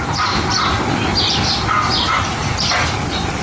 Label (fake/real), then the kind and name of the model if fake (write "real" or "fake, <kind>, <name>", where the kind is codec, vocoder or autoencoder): fake, vocoder, BigVGAN v2